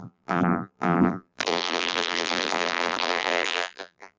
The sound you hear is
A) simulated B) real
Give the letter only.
A